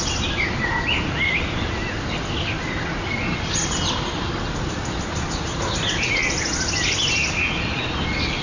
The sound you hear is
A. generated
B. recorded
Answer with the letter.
B